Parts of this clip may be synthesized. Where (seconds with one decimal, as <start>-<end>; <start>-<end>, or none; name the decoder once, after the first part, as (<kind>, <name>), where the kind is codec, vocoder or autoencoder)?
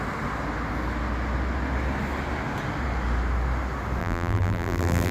4.0-5.1 (vocoder, BigVGAN v2)